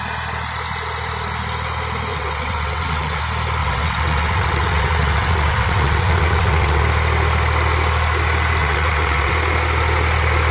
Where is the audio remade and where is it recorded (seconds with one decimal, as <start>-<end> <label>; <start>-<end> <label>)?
0.0-2.1 recorded; 2.1-3.2 remade; 3.2-3.6 recorded; 3.6-6.8 remade; 6.8-8.6 recorded; 8.6-9.3 remade; 9.3-10.5 recorded